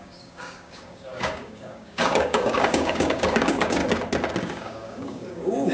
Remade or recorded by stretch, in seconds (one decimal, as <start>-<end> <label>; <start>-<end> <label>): 0.0-3.8 remade; 3.8-4.4 recorded; 4.4-5.7 remade